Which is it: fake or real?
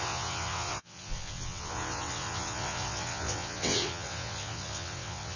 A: fake